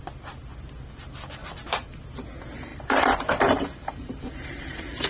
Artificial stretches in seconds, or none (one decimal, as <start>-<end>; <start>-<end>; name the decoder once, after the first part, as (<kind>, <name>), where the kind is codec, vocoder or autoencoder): 1.4-2.0 (vocoder, BigVGAN v2); 2.7-5.1